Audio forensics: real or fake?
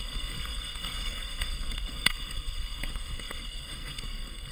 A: fake